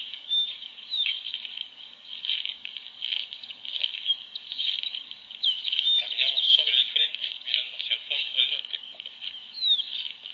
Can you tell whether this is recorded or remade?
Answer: remade